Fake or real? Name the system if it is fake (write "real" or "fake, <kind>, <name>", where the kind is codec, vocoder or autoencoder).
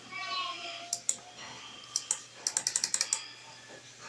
real